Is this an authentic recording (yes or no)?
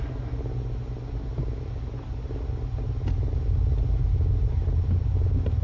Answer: yes